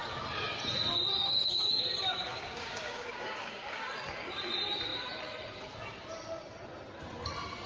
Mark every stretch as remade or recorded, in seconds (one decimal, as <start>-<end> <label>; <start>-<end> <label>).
0.0-1.2 recorded; 1.2-3.8 remade; 3.8-7.7 recorded